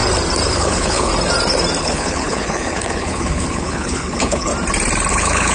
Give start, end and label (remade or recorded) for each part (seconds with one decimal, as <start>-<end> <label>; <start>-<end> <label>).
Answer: 0.0-0.5 recorded; 0.5-1.1 remade; 1.1-1.8 recorded; 1.8-4.5 remade; 4.5-5.1 recorded; 5.1-5.5 remade